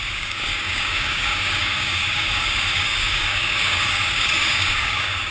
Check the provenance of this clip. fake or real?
fake